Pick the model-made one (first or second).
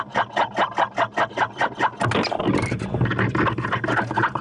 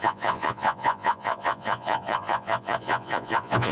second